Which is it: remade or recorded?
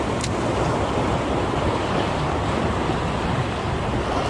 recorded